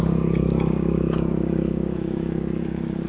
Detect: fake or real fake